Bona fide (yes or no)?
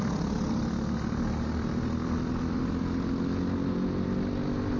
yes